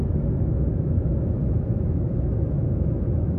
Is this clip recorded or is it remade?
remade